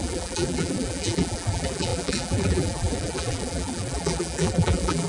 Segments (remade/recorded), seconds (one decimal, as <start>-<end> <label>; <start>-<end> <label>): 0.0-5.1 remade